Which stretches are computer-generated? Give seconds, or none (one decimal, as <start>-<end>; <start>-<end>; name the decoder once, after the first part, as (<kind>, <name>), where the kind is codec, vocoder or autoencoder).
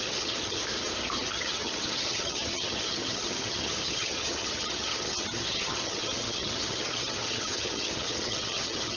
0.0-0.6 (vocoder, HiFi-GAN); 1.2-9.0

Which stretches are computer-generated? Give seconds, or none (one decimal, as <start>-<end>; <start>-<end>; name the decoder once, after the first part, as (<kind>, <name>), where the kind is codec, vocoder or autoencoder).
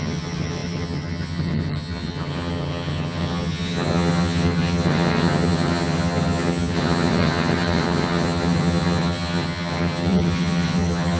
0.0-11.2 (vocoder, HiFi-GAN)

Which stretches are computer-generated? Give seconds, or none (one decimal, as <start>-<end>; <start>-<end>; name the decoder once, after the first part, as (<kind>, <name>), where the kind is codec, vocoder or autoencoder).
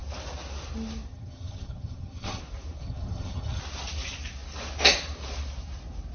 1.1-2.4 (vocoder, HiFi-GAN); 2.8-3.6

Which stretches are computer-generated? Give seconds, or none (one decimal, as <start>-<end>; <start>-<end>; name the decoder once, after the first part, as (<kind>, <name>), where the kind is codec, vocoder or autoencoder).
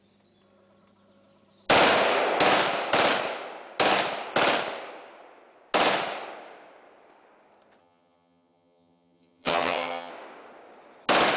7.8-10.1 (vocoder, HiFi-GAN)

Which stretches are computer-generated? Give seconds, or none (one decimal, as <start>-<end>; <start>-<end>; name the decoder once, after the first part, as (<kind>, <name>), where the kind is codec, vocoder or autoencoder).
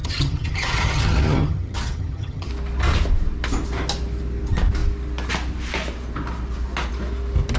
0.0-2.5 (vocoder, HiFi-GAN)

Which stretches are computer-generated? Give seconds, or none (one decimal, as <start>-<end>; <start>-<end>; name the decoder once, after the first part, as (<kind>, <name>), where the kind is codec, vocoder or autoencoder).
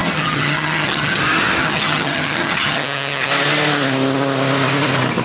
0.0-1.2 (vocoder, HiFi-GAN); 1.6-3.3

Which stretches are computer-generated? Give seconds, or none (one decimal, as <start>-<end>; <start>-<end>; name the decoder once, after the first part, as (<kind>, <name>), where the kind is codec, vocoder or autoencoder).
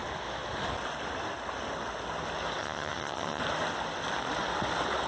2.6-3.4 (vocoder, HiFi-GAN)